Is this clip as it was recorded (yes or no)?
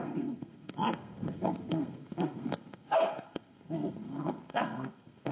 no